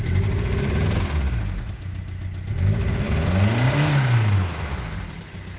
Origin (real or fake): real